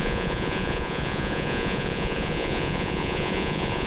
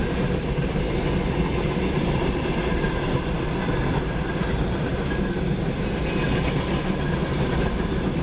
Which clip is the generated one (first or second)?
first